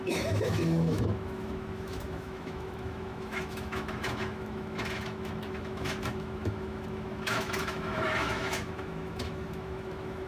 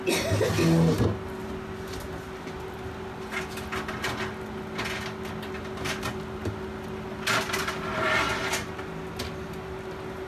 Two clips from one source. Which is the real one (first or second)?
second